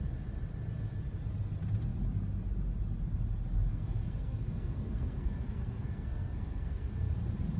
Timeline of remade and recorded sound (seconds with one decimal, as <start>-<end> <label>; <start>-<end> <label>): 0.0-3.7 recorded; 3.7-7.1 remade; 7.1-7.6 recorded